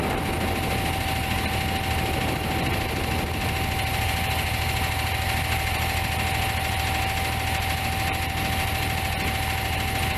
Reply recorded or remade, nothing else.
recorded